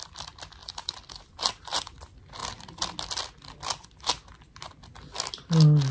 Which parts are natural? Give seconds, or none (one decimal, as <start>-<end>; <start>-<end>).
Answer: 0.0-0.6; 2.0-5.9